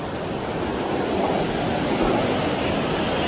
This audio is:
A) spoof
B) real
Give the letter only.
B